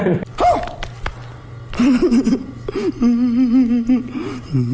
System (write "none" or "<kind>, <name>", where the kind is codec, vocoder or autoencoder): none